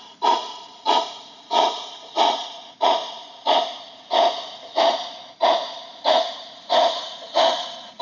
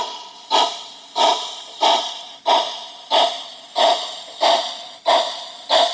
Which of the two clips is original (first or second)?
second